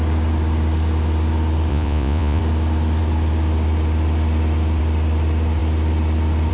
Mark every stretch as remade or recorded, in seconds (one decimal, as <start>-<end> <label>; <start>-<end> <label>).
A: 0.0-1.7 recorded; 1.7-2.4 remade; 2.4-6.5 recorded